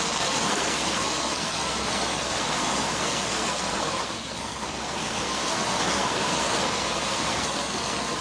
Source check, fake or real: fake